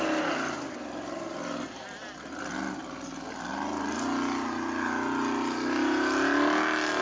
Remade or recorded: recorded